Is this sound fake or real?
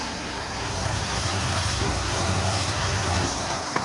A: fake